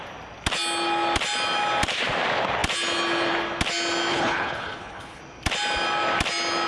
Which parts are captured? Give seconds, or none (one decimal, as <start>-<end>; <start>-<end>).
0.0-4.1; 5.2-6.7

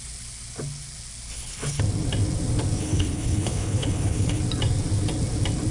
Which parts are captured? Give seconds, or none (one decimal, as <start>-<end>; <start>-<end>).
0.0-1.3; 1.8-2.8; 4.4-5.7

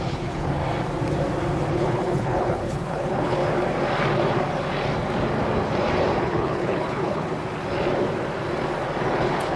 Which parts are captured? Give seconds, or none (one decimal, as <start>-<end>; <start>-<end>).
0.6-1.7; 3.4-6.2; 7.3-9.2

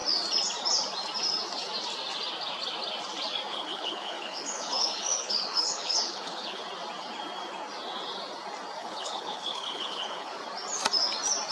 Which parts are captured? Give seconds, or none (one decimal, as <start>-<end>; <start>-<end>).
0.0-3.5; 6.6-8.8; 10.4-11.5

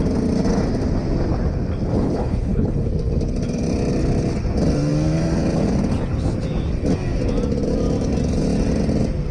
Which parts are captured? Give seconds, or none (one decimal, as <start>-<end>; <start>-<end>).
0.0-1.9; 2.9-9.3